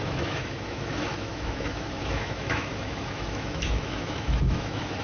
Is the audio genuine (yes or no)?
no